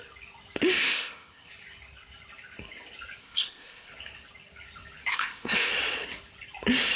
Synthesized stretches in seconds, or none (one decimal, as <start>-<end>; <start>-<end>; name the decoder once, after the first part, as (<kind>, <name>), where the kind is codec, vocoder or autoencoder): 0.8-1.5 (codec, ZipCodec); 3.2-3.9; 5.1-5.7